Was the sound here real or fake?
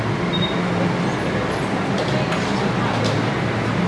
real